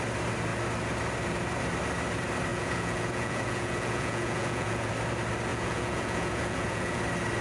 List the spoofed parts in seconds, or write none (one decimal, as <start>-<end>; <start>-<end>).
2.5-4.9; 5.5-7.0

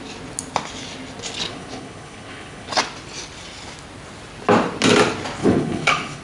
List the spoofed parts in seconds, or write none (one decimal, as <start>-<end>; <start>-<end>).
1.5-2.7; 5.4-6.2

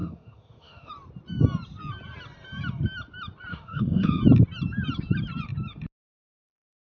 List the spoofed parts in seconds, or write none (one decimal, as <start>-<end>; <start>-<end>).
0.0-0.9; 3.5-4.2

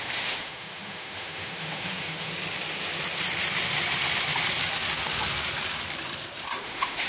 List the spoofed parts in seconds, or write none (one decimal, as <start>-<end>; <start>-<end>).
0.0-2.3; 6.6-7.1